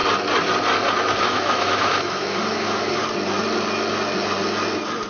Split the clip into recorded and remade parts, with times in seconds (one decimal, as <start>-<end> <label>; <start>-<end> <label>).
0.0-1.2 recorded; 1.2-3.0 remade; 3.0-5.1 recorded